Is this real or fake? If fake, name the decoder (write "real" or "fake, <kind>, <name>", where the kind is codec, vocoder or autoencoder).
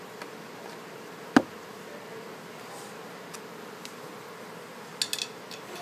real